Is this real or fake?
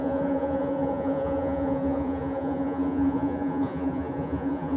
fake